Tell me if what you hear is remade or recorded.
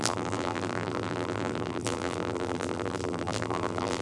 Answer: remade